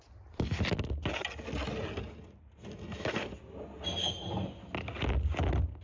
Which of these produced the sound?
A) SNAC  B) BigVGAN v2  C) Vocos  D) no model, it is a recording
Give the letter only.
D